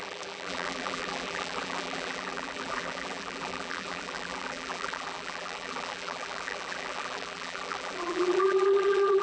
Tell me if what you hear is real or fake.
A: fake